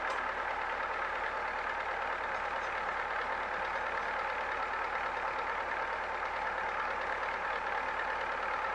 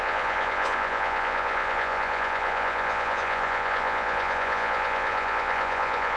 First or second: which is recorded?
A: first